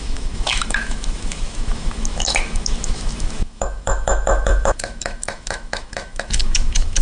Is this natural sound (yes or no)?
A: no